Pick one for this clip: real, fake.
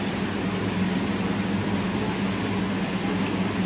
real